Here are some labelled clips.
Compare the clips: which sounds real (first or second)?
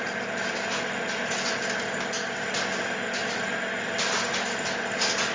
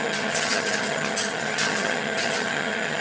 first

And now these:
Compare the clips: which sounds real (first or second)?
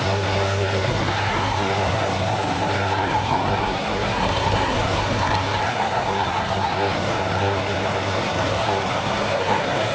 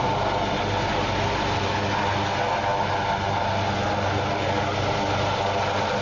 second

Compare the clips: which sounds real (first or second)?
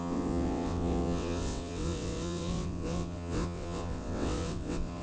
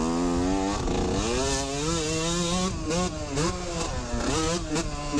second